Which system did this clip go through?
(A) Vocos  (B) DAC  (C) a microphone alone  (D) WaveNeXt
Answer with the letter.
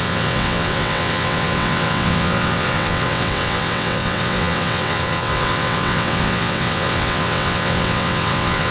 D